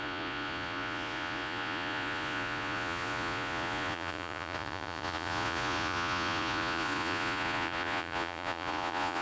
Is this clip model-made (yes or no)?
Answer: yes